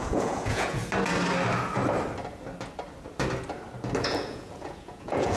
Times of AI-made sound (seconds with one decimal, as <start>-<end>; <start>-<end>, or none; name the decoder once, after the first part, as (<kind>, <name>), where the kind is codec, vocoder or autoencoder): 0.0-0.8 (vocoder, Vocos); 4.0-5.4